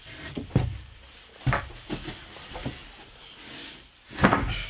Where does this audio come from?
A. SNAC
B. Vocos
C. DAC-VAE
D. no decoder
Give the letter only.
D